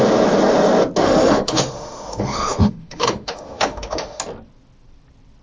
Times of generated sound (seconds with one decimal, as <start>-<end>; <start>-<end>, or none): 1.0-4.2